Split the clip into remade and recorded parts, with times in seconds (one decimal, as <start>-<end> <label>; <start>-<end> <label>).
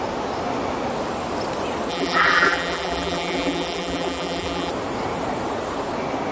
0.0-1.9 recorded; 1.9-4.7 remade; 4.7-6.3 recorded